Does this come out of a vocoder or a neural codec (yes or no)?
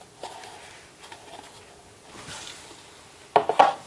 no